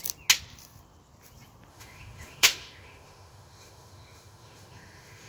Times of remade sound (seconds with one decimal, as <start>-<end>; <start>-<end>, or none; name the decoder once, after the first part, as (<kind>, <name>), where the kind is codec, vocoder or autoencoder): 1.7-5.3 (autoencoder, DAC-VAE)